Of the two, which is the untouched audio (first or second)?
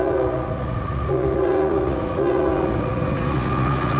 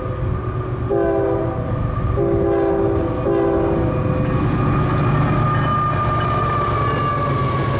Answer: second